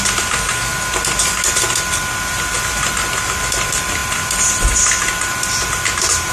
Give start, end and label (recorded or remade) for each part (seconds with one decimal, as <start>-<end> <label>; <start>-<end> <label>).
0.0-6.3 recorded